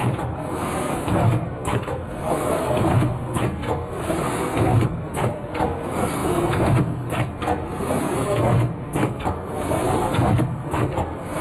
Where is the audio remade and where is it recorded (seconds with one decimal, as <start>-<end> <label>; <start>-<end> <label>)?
0.0-11.4 remade